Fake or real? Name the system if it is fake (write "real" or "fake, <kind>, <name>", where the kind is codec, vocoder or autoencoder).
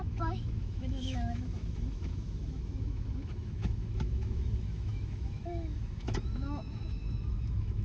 fake, autoencoder, DAC-VAE